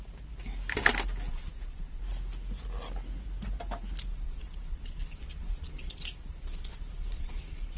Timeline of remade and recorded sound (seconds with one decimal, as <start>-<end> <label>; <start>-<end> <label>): 0.0-1.3 recorded; 1.3-2.0 remade; 2.0-4.1 recorded; 4.1-7.8 remade